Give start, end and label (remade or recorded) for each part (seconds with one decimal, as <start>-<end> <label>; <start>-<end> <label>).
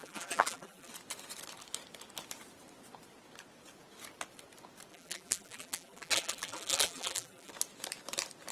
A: 0.0-0.9 remade; 0.9-4.9 recorded; 4.9-7.5 remade; 7.5-8.5 recorded